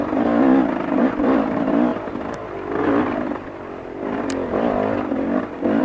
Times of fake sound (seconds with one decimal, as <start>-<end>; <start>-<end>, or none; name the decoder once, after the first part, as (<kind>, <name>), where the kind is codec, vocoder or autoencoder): none